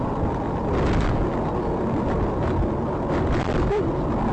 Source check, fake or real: real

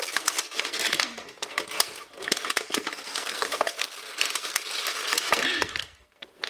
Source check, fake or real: fake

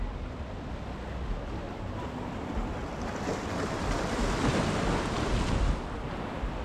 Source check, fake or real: real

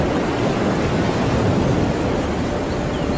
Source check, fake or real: real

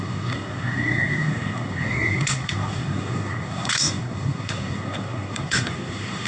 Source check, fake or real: fake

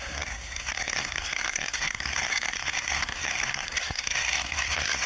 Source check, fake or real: fake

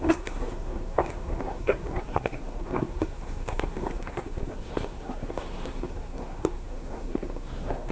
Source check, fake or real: fake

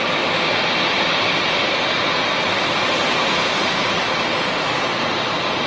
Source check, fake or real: real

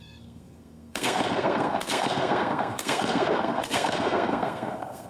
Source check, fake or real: fake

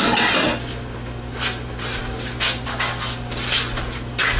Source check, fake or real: real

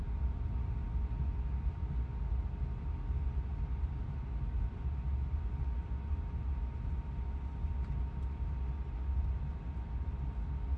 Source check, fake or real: real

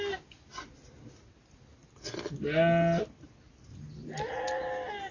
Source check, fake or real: real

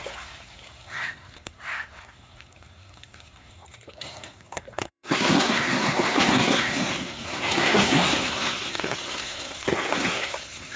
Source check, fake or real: fake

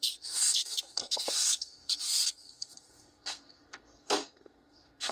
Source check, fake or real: fake